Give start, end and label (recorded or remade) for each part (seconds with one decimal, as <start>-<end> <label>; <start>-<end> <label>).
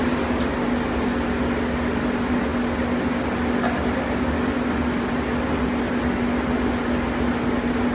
0.0-7.9 recorded